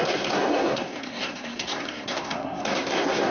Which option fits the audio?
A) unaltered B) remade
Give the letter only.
B